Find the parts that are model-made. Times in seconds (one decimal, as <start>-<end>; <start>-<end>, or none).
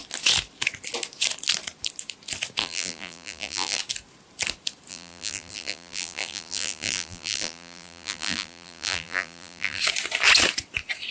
2.6-3.8; 4.9-9.8